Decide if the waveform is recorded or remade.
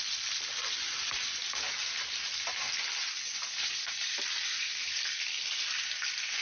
recorded